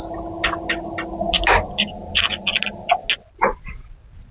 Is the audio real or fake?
real